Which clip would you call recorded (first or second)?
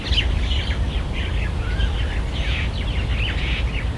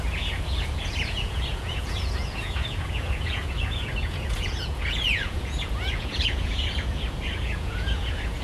first